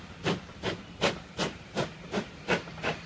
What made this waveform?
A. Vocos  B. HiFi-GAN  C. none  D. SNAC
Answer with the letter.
C